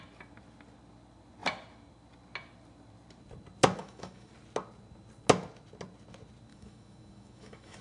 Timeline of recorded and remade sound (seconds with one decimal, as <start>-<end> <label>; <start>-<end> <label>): 0.0-3.8 recorded; 3.8-4.3 remade; 4.3-6.5 recorded; 6.5-7.8 remade